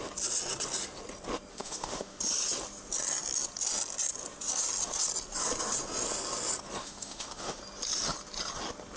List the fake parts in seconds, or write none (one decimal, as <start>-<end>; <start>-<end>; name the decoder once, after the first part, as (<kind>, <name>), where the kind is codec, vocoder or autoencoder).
1.5-2.2 (autoencoder, DAC-VAE); 6.8-7.6